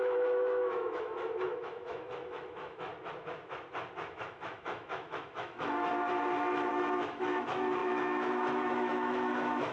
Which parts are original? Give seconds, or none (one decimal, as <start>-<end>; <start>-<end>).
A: 2.9-4.1; 5.9-6.7